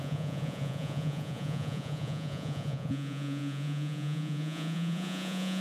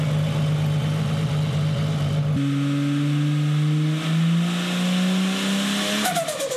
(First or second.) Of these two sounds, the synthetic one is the first